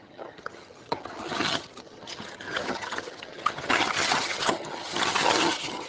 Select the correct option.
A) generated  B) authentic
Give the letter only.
A